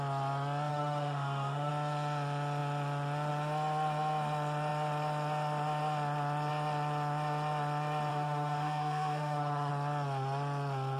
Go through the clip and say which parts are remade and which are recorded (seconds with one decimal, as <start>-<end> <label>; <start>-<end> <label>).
0.0-0.7 recorded; 0.7-1.7 remade; 1.7-8.1 recorded; 8.1-9.7 remade; 9.7-11.0 recorded